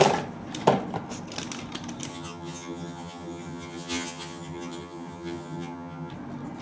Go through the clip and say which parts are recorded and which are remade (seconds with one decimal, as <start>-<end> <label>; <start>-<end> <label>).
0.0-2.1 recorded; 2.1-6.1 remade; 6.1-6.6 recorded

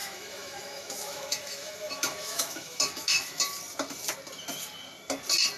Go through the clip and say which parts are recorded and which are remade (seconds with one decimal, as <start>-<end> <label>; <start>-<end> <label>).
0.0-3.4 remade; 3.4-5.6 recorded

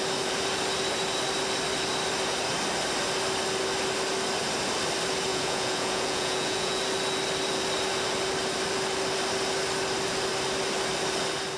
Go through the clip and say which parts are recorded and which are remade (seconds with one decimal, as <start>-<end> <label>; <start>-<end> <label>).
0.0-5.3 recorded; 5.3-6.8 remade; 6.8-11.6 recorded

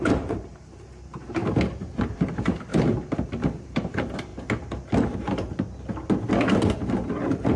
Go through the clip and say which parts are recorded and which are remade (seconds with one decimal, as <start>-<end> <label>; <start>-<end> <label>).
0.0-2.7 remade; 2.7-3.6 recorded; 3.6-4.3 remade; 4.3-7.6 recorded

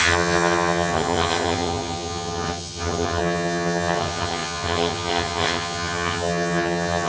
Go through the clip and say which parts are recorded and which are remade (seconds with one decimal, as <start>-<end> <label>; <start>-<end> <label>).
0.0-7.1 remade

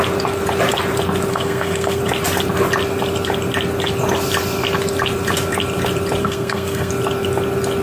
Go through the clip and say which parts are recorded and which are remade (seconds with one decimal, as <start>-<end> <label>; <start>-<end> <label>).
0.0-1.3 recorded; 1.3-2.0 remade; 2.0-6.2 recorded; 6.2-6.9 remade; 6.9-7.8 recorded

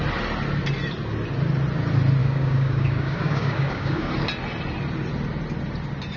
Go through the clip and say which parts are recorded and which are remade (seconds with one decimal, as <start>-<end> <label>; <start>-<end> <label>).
0.0-2.2 recorded; 2.2-4.1 remade; 4.1-6.2 recorded

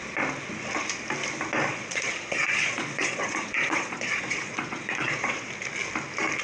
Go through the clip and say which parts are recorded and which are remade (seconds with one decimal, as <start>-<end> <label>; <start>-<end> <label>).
0.0-1.7 recorded; 1.7-5.5 remade; 5.5-6.4 recorded